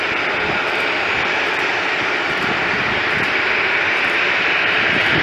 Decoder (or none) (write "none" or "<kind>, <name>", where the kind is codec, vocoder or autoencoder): none